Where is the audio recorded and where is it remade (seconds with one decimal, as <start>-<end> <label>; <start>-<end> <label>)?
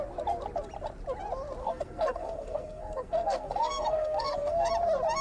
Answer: 0.0-1.6 recorded; 1.6-4.7 remade; 4.7-5.2 recorded